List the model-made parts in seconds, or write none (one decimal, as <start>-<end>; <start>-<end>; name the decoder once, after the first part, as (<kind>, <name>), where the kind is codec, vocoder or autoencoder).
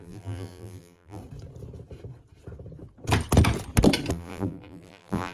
0.0-1.2 (vocoder, BigVGAN v2); 4.1-5.3